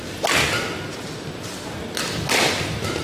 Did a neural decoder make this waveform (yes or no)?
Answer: no